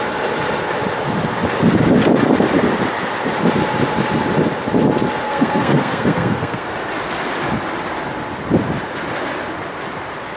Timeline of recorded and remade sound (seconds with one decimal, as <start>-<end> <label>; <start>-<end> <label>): 0.0-5.2 recorded; 5.2-6.7 remade; 6.7-10.4 recorded